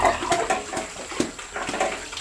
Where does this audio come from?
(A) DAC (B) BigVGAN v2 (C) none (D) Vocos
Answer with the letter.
C